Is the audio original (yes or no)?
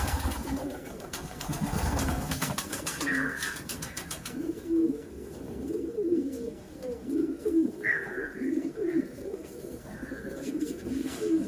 no